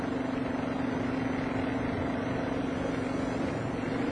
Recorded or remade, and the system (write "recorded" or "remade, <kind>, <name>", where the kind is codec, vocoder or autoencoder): recorded